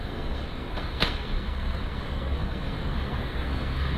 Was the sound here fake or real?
fake